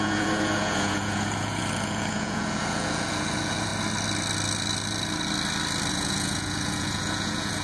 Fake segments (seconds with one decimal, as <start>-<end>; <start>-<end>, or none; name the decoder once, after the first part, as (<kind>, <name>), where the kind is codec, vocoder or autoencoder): 0.0-3.7 (vocoder, Vocos); 5.9-7.6

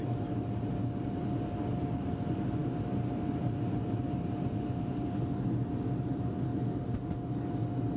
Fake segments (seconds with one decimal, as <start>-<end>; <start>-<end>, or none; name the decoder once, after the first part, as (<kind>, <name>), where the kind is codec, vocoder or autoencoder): none

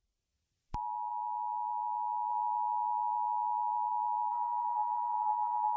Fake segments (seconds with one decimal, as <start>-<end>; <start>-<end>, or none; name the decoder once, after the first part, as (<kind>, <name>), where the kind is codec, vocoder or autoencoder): 4.3-5.8 (codec, SNAC)

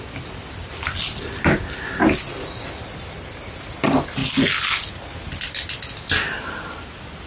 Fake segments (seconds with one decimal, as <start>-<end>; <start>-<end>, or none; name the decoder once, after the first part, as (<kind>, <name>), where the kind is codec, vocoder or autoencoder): none